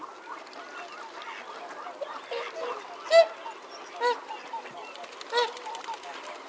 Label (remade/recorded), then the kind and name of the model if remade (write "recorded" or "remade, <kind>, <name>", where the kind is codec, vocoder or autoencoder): recorded